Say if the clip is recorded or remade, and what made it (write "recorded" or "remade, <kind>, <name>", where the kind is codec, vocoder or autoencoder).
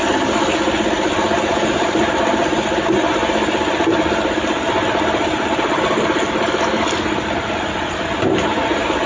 recorded